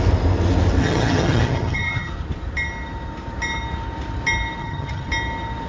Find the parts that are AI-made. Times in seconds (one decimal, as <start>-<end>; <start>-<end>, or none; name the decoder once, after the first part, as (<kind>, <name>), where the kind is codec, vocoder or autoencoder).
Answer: 0.8-2.1 (vocoder, HiFi-GAN); 4.6-5.1